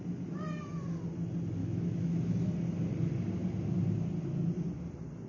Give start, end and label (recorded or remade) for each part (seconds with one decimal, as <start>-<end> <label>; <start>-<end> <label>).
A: 0.0-1.6 recorded; 1.6-2.2 remade; 2.2-5.3 recorded